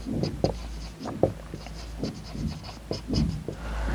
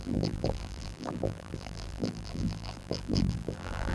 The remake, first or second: second